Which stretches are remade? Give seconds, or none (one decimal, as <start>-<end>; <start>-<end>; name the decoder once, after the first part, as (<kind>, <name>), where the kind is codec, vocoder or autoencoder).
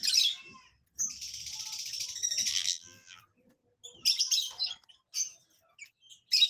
2.5-3.2 (vocoder, BigVGAN v2)